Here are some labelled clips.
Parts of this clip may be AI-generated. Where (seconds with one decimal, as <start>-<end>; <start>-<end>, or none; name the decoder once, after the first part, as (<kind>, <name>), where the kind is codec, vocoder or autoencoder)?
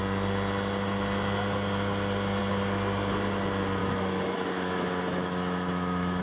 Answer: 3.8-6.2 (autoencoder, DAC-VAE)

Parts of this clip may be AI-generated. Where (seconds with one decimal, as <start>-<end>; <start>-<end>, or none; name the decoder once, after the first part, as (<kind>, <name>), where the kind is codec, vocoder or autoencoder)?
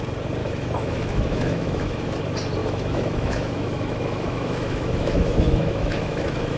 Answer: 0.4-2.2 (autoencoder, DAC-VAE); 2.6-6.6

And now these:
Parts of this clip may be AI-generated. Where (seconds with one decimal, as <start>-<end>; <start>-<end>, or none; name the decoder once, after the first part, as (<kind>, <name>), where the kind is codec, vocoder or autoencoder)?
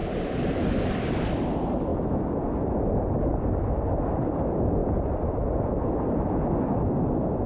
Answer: none